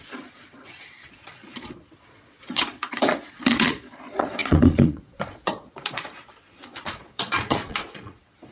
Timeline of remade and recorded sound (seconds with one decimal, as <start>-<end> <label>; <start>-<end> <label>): 0.0-8.5 remade